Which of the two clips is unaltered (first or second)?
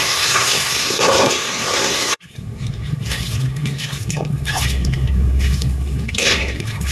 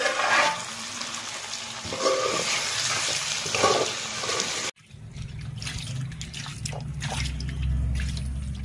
second